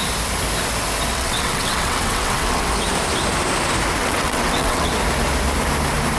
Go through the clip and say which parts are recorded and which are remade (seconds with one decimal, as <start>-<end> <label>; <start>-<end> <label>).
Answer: 0.0-1.1 recorded; 1.1-2.7 remade; 2.7-4.0 recorded; 4.0-4.9 remade; 4.9-6.2 recorded